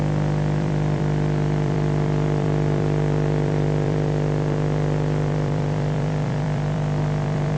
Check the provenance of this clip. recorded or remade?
remade